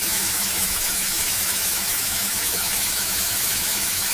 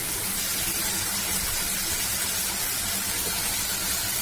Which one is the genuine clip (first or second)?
second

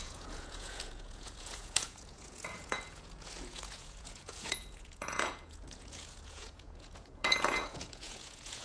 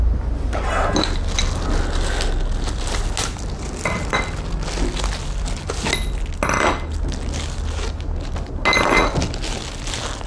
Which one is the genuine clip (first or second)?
second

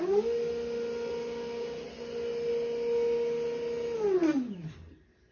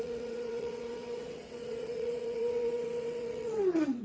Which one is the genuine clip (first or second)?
first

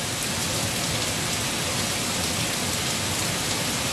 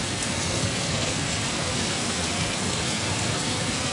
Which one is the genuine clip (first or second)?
first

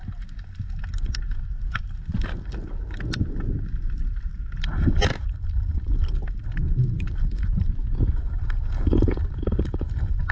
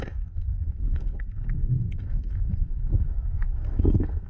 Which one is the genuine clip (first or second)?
first